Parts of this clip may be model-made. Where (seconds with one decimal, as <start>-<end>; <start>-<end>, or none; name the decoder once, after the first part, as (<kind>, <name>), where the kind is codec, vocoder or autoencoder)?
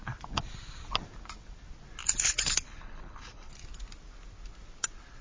2.0-3.5 (codec, HILCodec)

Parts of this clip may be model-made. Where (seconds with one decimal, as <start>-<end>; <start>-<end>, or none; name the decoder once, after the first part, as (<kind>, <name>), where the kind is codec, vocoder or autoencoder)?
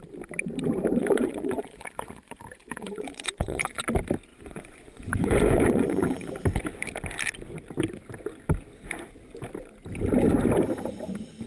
1.0-3.8 (vocoder, Vocos); 4.3-6.3